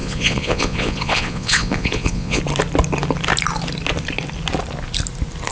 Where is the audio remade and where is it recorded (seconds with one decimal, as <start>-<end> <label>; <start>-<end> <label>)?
0.0-2.4 remade; 2.4-5.5 recorded